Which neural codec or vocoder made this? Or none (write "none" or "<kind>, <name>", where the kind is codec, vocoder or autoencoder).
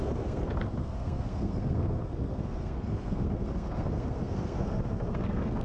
codec, SNAC